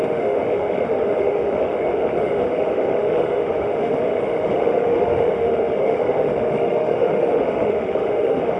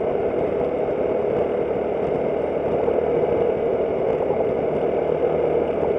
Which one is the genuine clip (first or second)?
second